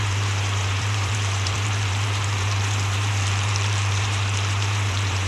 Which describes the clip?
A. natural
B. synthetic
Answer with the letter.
B